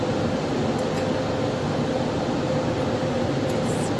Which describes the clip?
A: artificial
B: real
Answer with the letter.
B